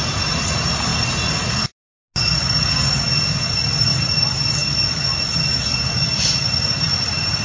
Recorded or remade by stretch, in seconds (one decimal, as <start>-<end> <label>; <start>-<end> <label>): 0.0-7.4 recorded